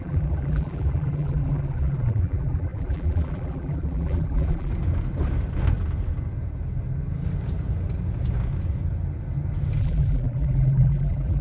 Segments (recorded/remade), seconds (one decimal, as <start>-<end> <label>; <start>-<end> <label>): 0.0-4.7 remade; 4.7-9.8 recorded; 9.8-11.4 remade